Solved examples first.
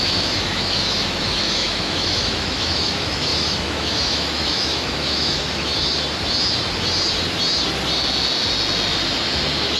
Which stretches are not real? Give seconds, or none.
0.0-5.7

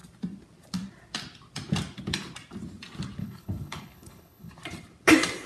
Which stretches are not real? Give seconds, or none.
3.2-4.5

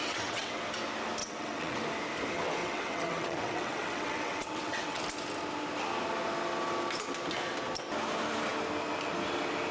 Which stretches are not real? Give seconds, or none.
0.0-0.6; 1.2-1.8; 2.6-5.0

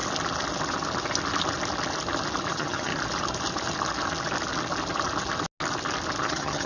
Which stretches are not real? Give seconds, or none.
2.5-2.9; 6.2-6.7

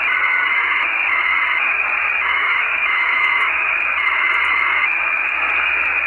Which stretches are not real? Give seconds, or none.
2.4-3.8

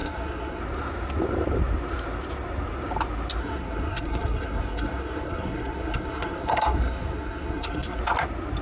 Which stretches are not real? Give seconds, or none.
0.0-0.6; 3.4-8.0

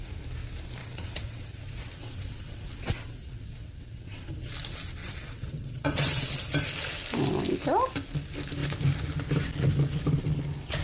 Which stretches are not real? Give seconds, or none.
0.8-4.3; 5.0-6.4

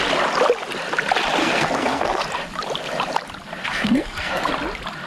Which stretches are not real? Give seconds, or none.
1.4-2.2; 3.6-4.5